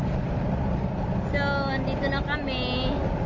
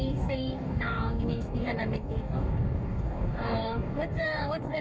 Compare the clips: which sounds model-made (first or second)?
second